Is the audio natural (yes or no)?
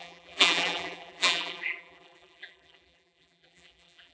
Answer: no